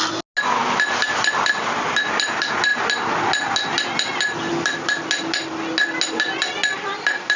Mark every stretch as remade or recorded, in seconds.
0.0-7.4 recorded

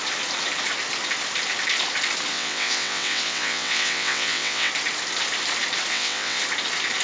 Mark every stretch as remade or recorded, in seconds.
0.0-2.3 recorded; 2.3-4.7 remade; 4.7-5.9 recorded; 5.9-6.4 remade; 6.4-7.0 recorded

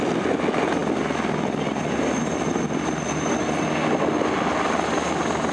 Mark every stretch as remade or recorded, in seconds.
0.0-5.5 recorded